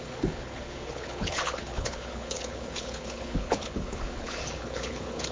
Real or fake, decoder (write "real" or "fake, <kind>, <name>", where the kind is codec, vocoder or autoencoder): fake, codec, HILCodec